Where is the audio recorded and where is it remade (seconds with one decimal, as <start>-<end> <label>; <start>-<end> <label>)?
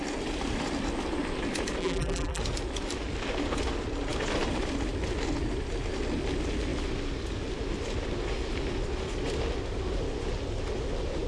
0.0-1.8 recorded; 1.8-2.4 remade; 2.4-11.3 recorded